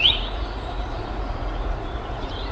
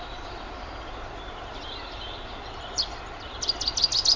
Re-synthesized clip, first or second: first